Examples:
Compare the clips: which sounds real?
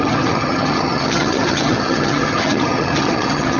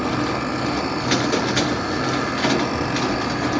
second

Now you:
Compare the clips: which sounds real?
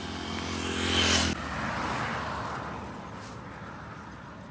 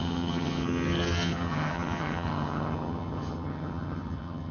first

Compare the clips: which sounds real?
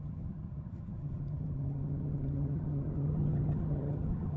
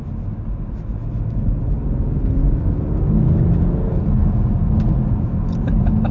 second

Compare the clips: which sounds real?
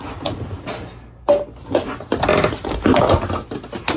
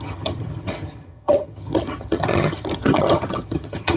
first